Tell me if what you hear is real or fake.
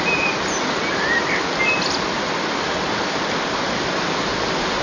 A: real